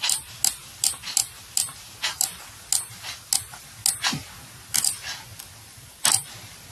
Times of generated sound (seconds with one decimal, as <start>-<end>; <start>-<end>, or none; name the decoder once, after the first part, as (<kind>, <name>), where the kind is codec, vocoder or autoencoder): none